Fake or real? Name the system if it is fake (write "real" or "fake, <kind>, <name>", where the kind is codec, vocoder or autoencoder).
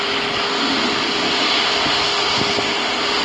real